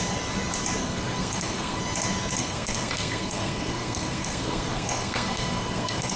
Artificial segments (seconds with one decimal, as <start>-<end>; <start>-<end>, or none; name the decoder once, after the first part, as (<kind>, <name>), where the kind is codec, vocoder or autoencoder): 0.8-1.8 (codec, SNAC); 2.4-6.2